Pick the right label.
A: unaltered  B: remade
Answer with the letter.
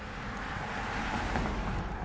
A